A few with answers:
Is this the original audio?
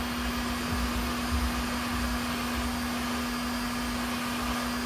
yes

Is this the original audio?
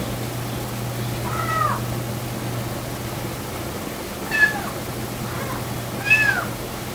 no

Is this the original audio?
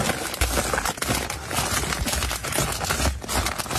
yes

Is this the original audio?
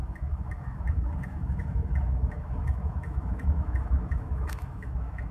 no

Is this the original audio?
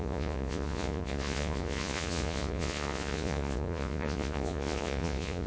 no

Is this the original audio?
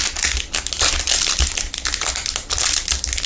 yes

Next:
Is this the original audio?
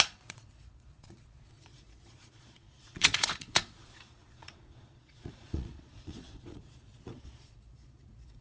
no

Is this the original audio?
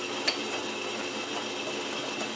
yes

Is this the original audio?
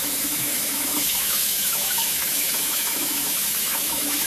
no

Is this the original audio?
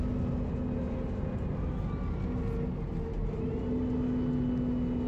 yes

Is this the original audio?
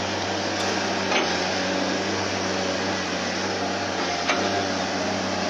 yes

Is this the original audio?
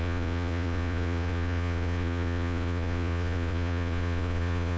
no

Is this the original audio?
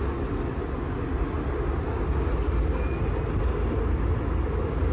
yes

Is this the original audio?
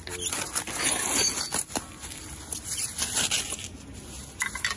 yes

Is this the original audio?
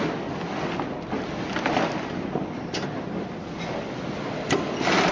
yes